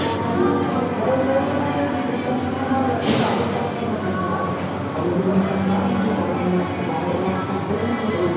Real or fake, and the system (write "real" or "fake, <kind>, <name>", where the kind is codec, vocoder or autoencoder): real